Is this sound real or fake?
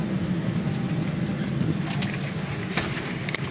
real